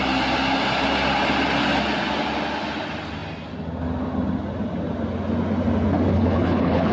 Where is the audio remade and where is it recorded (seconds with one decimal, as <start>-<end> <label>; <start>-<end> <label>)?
0.0-6.1 recorded; 6.1-6.9 remade

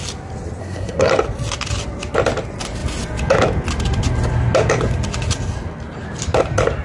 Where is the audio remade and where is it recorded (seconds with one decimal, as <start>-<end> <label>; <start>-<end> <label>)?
0.0-0.6 recorded; 0.6-1.1 remade; 1.1-6.8 recorded

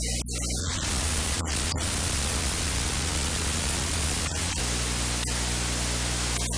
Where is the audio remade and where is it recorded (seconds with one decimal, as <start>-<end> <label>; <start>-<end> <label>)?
0.0-0.6 recorded; 0.6-4.6 remade; 4.6-6.6 recorded

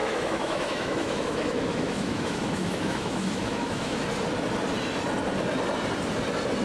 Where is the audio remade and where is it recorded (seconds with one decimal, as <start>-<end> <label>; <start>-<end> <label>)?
0.0-4.0 remade; 4.0-6.6 recorded

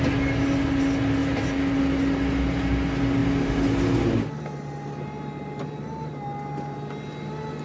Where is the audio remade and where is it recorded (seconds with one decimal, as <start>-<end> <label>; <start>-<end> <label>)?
0.0-7.6 recorded

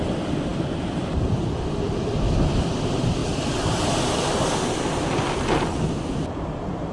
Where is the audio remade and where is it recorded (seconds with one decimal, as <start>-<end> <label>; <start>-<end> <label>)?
0.0-6.9 remade